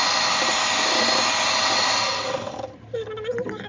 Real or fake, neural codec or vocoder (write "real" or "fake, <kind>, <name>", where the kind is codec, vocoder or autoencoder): real